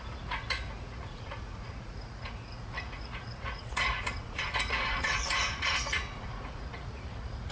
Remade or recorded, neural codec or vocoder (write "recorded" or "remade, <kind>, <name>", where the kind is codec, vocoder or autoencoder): remade, vocoder, Vocos